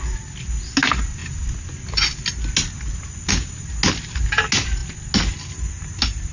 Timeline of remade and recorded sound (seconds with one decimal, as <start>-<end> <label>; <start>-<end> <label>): 0.0-6.3 recorded